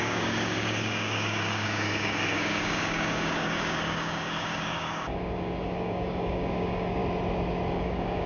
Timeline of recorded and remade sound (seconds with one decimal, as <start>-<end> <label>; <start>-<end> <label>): 0.0-7.0 remade; 7.0-7.7 recorded; 7.7-8.3 remade